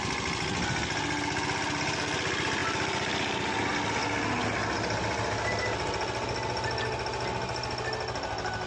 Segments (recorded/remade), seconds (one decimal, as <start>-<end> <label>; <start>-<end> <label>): 0.0-8.7 recorded